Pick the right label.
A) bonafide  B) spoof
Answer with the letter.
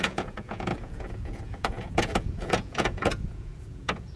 B